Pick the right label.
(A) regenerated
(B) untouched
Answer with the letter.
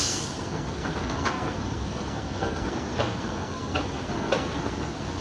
A